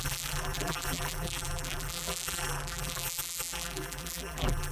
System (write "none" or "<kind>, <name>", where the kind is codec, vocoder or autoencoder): vocoder, BigVGAN v2